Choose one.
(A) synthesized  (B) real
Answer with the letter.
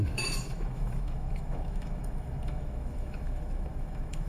A